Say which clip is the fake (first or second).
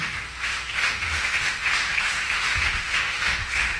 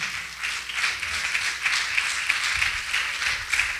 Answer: first